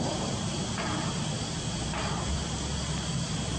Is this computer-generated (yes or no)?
no